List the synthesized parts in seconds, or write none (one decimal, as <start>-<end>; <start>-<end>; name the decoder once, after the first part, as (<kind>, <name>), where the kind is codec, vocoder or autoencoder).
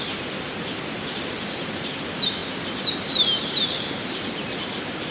none